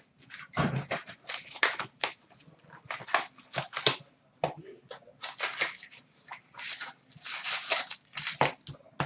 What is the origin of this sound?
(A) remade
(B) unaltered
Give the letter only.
B